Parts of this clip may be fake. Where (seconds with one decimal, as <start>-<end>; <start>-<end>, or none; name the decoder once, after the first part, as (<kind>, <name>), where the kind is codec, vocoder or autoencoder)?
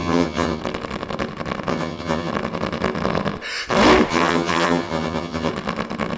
0.0-0.6 (vocoder, HiFi-GAN); 1.7-2.3; 4.1-5.5